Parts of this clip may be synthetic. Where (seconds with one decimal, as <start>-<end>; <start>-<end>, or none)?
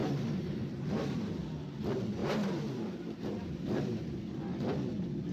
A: 0.0-1.4; 2.2-4.0